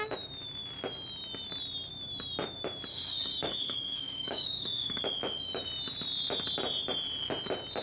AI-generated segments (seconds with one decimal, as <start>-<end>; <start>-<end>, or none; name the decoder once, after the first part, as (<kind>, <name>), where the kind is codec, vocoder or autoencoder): 2.9-5.0 (codec, DAC)

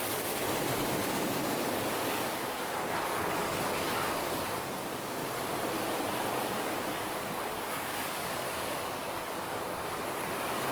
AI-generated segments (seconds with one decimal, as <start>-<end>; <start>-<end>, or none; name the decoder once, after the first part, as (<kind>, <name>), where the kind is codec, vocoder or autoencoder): 0.0-5.2 (codec, DAC); 6.4-10.7

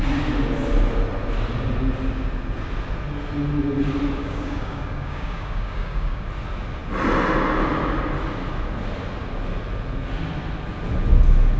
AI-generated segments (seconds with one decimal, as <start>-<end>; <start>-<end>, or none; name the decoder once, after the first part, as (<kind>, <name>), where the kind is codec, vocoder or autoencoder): 4.2-6.3 (codec, DAC)

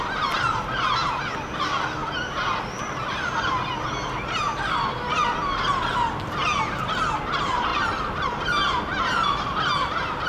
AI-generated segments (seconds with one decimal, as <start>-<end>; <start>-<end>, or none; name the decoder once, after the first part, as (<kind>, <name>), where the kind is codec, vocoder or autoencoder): none

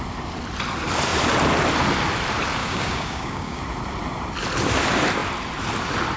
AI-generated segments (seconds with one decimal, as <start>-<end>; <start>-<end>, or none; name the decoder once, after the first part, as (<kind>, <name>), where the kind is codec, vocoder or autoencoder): 2.6-3.6 (codec, DAC)

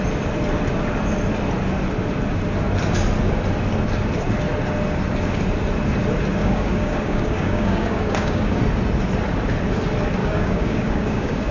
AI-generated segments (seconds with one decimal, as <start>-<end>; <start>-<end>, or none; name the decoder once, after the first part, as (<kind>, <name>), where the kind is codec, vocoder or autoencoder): 6.4-8.6 (codec, DAC); 10.2-11.5

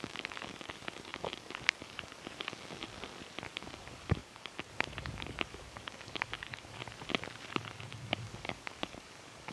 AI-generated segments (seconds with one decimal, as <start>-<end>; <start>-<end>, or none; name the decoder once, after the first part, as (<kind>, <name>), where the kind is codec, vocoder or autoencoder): 0.0-2.8 (codec, DAC); 3.5-6.8; 7.5-9.5